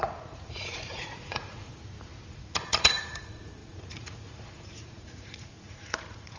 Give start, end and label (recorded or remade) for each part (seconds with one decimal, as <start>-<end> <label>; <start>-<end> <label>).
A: 0.0-1.8 remade; 1.8-2.3 recorded; 2.3-6.4 remade